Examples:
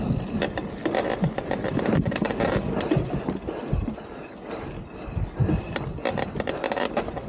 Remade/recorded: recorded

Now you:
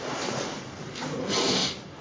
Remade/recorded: remade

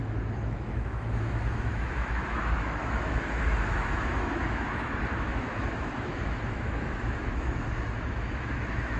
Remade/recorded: remade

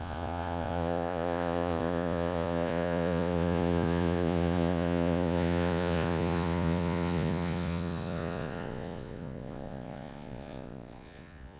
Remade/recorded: remade